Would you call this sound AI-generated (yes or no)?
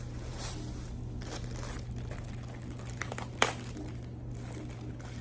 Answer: no